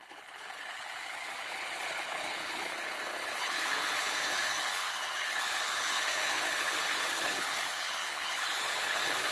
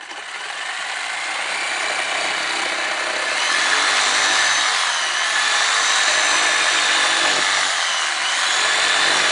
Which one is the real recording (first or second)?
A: second